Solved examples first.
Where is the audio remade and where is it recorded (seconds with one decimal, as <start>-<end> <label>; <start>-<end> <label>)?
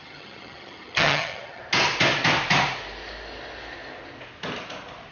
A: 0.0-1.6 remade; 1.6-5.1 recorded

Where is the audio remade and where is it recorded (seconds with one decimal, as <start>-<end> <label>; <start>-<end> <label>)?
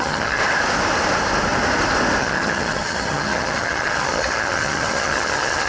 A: 0.0-0.4 remade; 0.4-2.2 recorded; 2.2-5.7 remade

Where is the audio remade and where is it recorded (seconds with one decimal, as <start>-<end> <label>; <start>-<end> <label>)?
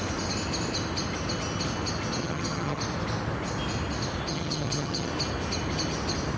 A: 0.0-2.2 recorded; 2.2-2.8 remade; 2.8-4.3 recorded; 4.3-5.1 remade; 5.1-6.4 recorded